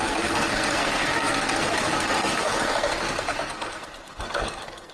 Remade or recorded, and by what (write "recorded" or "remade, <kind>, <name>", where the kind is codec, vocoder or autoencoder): remade, codec, SNAC